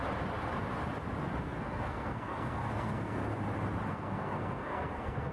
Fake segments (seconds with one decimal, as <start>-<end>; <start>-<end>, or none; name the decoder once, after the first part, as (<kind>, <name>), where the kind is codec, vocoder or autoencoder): 1.4-3.3 (codec, SNAC); 3.9-5.3